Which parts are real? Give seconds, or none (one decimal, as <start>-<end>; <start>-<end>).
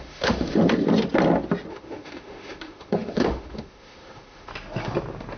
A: 0.6-1.7; 4.5-5.4